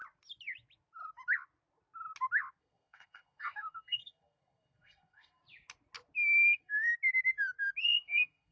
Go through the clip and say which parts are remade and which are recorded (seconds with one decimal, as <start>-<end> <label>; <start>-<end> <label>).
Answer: 0.0-2.6 recorded; 2.6-5.4 remade; 5.4-6.5 recorded; 6.5-6.9 remade; 6.9-7.8 recorded; 7.8-8.5 remade

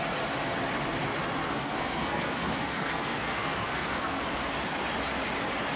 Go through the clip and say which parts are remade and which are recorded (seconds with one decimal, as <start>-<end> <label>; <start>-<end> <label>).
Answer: 0.0-1.4 recorded; 1.4-4.2 remade; 4.2-5.8 recorded

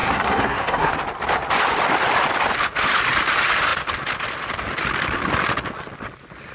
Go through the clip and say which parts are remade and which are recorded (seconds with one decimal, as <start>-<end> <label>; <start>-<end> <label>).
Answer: 0.0-0.9 remade; 0.9-6.5 recorded

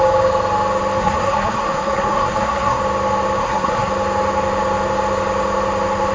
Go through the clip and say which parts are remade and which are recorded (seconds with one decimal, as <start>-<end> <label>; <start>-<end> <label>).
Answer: 0.0-1.0 recorded; 1.0-2.8 remade; 2.8-3.4 recorded; 3.4-3.9 remade; 3.9-6.1 recorded

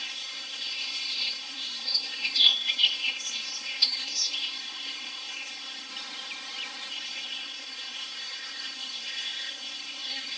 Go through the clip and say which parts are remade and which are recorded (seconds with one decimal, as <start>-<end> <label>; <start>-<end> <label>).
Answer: 0.0-5.9 remade; 5.9-6.9 recorded; 6.9-10.4 remade

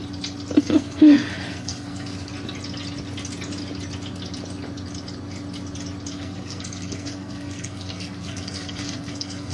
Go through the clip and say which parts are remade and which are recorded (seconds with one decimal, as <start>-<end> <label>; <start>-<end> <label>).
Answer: 0.0-0.6 recorded; 0.6-2.3 remade; 2.3-6.1 recorded; 6.1-9.5 remade